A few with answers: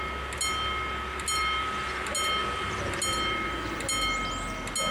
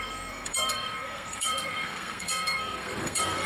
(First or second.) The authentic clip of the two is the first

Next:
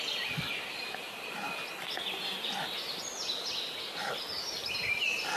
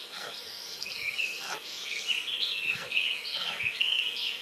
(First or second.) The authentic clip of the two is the first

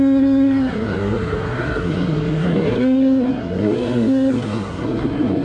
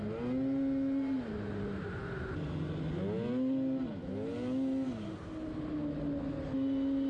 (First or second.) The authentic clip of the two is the second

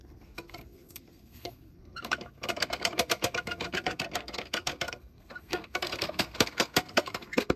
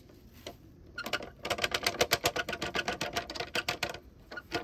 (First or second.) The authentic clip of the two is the second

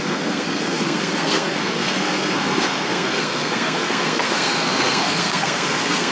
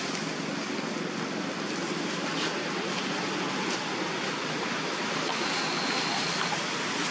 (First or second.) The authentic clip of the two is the second